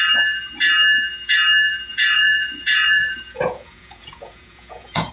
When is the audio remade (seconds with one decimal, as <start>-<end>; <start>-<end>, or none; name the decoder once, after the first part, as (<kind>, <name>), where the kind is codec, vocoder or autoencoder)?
1.9-5.1 (vocoder, Vocos)

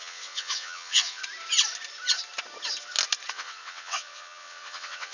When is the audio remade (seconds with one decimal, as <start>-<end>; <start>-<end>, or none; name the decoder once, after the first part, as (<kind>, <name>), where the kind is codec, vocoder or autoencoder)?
0.0-1.2 (vocoder, WaveNeXt); 3.3-5.1

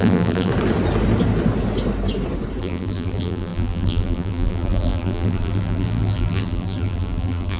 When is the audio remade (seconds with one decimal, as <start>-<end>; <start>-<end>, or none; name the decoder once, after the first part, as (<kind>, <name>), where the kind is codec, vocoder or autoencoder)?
0.0-0.5 (vocoder, BigVGAN v2); 2.6-7.6

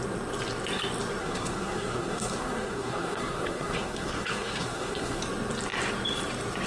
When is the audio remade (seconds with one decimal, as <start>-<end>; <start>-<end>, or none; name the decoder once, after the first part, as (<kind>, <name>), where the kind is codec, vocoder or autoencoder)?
1.2-5.2 (codec, SNAC)

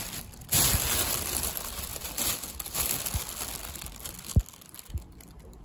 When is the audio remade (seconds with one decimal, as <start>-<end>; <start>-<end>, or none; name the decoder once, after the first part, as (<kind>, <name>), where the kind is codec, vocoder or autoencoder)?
none

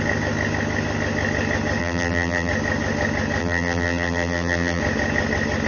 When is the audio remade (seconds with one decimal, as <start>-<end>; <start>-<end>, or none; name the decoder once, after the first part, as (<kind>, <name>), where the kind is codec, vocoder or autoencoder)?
1.8-2.5 (vocoder, BigVGAN v2); 3.4-4.8

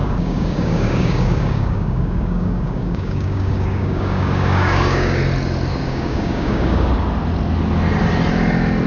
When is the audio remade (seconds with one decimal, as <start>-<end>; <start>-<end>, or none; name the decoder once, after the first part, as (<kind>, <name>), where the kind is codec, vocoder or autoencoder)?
0.0-5.2 (codec, DAC); 5.7-6.9

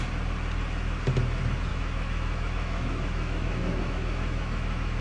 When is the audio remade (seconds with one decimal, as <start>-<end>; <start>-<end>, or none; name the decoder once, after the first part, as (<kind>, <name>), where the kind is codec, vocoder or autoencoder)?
1.7-5.0 (autoencoder, DAC-VAE)